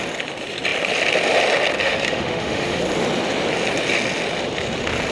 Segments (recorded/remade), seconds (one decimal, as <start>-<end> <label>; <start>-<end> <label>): 0.0-1.8 recorded; 1.8-2.8 remade; 2.8-5.1 recorded